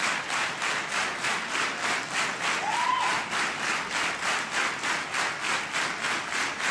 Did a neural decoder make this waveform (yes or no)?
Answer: no